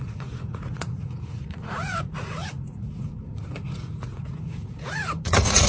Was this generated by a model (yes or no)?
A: yes